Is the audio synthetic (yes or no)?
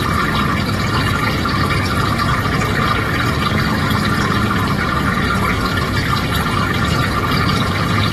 no